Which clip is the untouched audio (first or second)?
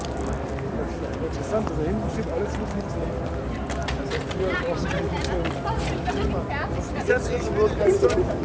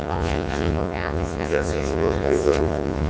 first